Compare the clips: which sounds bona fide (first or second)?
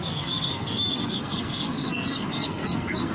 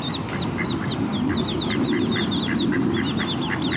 second